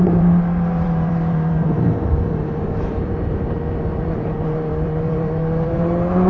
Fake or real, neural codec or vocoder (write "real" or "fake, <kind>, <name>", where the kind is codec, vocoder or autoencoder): fake, vocoder, BigVGAN v2